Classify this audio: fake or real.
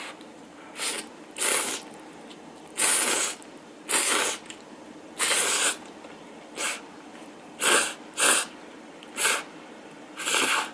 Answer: real